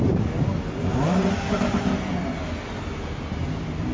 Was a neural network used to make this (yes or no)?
no